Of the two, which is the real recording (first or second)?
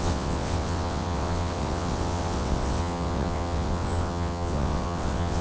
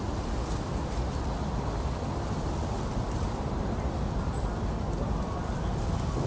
second